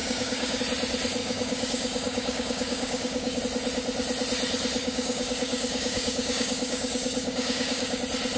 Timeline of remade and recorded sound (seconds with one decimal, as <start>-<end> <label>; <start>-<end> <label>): 0.0-0.6 remade; 0.6-1.2 recorded; 1.2-3.4 remade; 3.4-4.8 recorded; 4.8-8.0 remade; 8.0-8.4 recorded